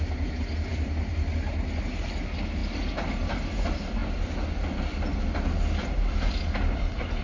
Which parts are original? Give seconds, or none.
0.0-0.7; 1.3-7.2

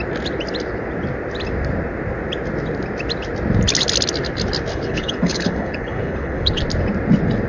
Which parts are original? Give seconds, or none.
0.0-4.7; 6.6-7.5

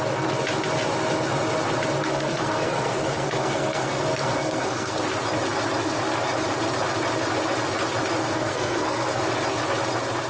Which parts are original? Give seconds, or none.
0.0-2.0; 5.0-8.2; 9.2-10.3

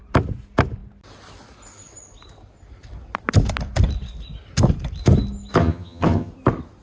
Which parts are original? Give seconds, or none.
0.0-5.6; 6.3-6.8

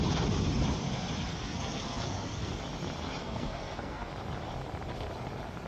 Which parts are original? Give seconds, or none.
0.0-1.3; 2.6-3.2; 4.1-5.7

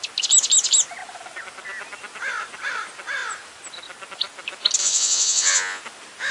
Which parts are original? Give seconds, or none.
0.0-4.8; 5.8-6.3

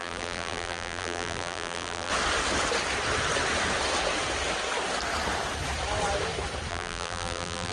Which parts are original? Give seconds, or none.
2.1-6.7

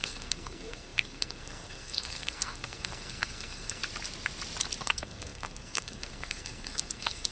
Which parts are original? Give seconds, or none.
3.8-4.8